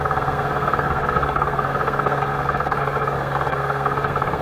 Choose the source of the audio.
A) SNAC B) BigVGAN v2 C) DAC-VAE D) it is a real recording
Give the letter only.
A